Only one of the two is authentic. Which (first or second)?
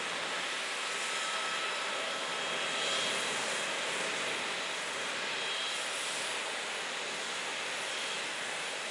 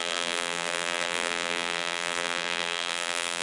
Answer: first